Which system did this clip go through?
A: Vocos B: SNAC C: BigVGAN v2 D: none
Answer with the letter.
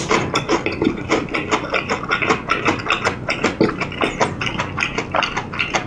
D